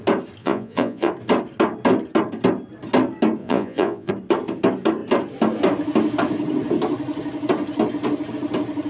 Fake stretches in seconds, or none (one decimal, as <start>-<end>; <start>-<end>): 0.4-1.1; 3.4-4.1